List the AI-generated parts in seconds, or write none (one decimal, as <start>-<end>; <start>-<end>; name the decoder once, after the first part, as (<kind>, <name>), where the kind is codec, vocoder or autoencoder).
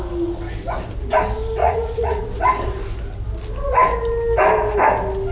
1.6-2.2 (vocoder, Vocos)